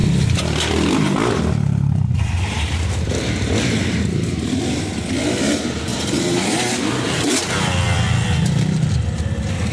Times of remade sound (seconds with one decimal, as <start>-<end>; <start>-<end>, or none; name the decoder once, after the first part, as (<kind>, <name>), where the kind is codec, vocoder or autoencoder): 0.0-4.3 (vocoder, BigVGAN v2); 5.9-7.3